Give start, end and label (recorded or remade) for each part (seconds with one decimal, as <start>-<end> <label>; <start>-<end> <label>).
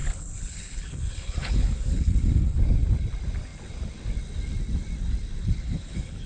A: 0.0-2.6 remade; 2.6-5.4 recorded; 5.4-6.3 remade